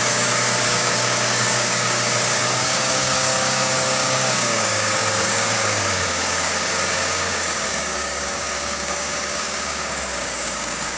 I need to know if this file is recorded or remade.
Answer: remade